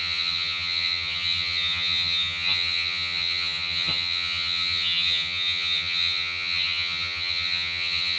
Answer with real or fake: fake